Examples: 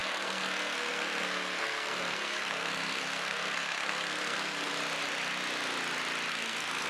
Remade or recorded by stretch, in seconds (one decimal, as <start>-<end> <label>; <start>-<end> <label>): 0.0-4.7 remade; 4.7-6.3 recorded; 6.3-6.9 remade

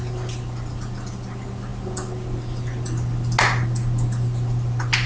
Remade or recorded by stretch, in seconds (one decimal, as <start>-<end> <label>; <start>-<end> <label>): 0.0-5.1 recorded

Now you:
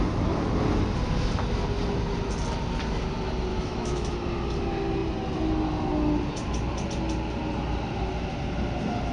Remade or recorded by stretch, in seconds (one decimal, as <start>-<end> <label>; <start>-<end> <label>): 0.0-3.5 recorded; 3.5-4.1 remade; 4.1-9.1 recorded

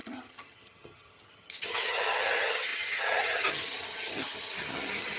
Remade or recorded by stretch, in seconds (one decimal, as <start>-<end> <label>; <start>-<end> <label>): 0.0-5.2 remade